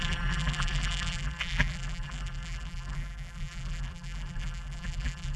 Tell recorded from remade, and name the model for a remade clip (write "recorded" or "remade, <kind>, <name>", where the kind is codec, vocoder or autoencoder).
remade, vocoder, BigVGAN v2